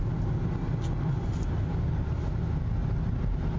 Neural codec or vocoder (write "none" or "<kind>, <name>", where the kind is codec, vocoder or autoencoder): none